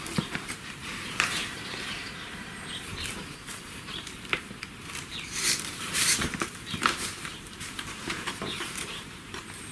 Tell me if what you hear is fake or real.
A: fake